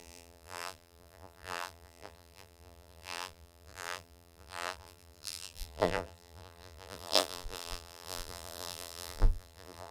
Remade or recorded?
remade